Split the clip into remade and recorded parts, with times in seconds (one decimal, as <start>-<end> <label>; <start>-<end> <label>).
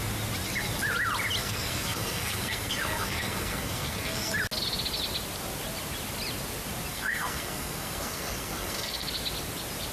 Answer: 0.0-1.4 recorded; 1.4-4.3 remade; 4.3-6.9 recorded; 6.9-9.1 remade; 9.1-9.9 recorded